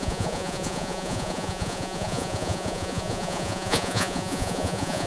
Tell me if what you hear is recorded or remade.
remade